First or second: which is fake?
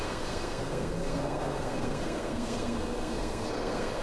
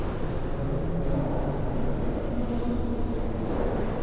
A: first